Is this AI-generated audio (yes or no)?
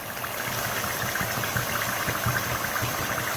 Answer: no